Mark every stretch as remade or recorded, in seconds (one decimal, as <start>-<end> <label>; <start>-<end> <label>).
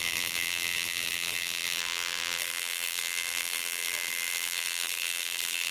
0.0-5.7 remade